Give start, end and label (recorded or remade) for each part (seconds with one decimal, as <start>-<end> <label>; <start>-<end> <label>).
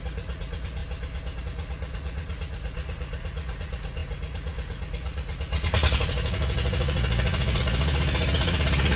0.0-0.8 remade; 0.8-1.4 recorded; 1.4-9.0 remade